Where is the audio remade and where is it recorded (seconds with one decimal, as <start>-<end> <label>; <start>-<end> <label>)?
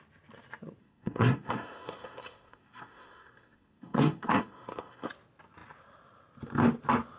0.0-0.8 recorded; 0.8-5.1 remade; 5.1-7.2 recorded